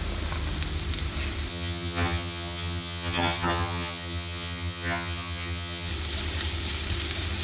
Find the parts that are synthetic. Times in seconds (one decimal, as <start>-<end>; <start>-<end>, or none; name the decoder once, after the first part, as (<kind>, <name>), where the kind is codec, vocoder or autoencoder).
1.5-5.9 (vocoder, HiFi-GAN)